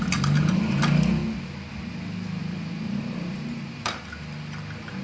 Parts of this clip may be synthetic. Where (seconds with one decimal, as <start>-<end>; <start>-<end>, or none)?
2.4-4.0